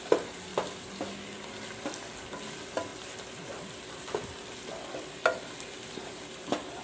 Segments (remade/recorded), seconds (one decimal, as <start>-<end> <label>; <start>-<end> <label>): 0.0-6.8 recorded